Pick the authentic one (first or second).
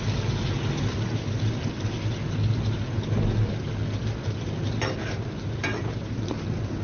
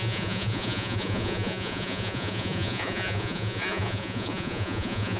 first